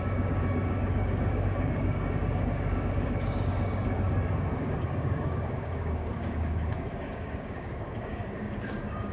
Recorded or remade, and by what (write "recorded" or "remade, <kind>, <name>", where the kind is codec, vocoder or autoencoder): remade, codec, DAC